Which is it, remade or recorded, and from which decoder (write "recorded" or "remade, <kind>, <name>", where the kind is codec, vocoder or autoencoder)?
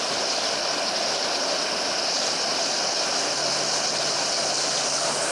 recorded